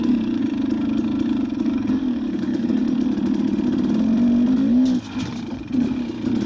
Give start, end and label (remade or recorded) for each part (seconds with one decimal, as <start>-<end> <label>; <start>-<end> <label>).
0.0-0.4 remade; 0.4-1.6 recorded; 1.6-2.8 remade; 2.8-6.5 recorded